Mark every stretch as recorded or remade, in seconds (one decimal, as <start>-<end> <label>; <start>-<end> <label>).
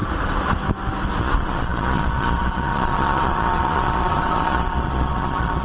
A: 0.0-1.2 recorded; 1.2-5.6 remade